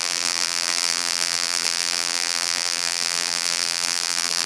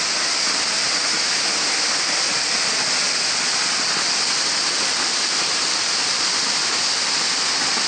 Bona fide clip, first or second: second